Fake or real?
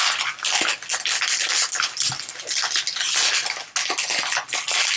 real